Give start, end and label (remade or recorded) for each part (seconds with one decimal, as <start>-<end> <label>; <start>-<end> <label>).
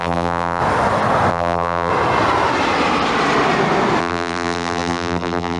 0.0-0.6 remade; 0.6-1.3 recorded; 1.3-1.9 remade; 1.9-4.0 recorded; 4.0-5.6 remade